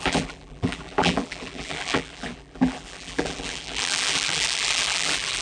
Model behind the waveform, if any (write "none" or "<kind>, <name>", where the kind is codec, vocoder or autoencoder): vocoder, BigVGAN v2